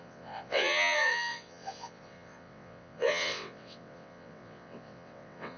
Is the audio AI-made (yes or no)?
yes